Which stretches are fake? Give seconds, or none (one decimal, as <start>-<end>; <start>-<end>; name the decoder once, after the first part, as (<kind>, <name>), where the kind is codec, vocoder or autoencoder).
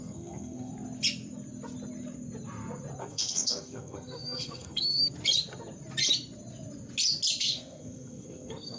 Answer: 0.0-0.7 (codec, SNAC); 3.0-5.0; 7.4-8.8